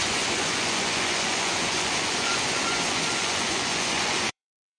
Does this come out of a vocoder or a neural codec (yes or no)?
yes